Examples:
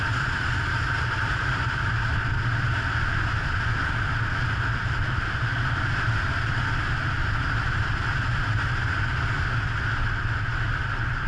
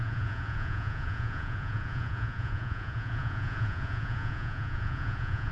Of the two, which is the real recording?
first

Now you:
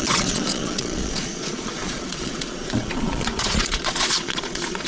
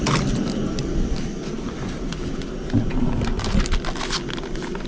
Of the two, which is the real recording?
second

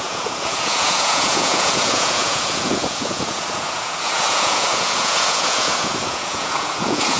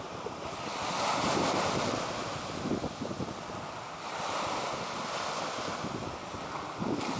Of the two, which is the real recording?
second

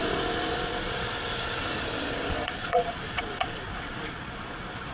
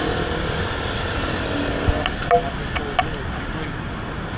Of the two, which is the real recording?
second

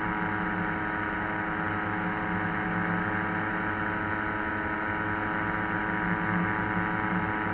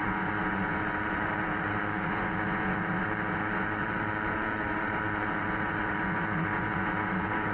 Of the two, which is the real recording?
first